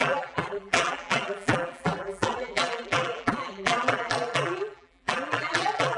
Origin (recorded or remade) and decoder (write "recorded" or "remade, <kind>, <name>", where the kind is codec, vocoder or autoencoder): remade, vocoder, BigVGAN v2